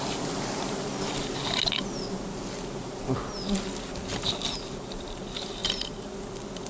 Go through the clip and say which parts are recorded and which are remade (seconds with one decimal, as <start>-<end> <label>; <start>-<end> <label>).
0.0-5.6 recorded; 5.6-6.2 remade; 6.2-6.7 recorded